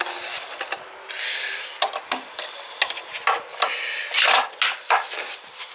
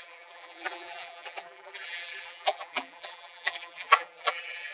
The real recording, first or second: first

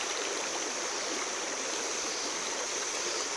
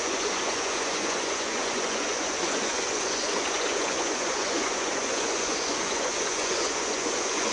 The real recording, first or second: first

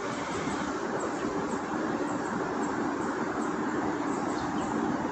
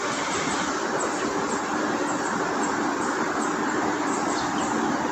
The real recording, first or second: second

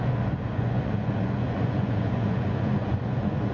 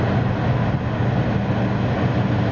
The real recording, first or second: second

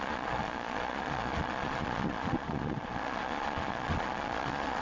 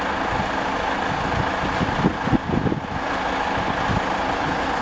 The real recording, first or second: second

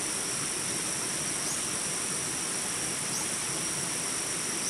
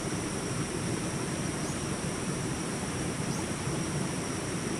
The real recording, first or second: first